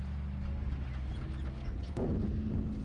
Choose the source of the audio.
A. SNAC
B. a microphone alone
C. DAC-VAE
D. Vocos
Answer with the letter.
B